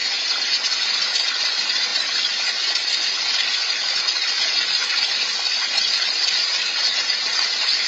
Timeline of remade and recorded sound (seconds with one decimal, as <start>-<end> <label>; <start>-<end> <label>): 0.0-7.9 recorded